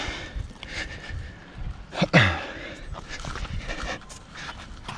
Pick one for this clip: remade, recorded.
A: recorded